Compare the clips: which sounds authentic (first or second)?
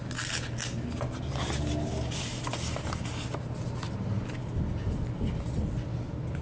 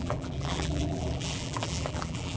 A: first